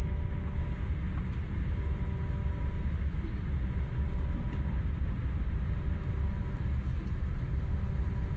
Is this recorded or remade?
recorded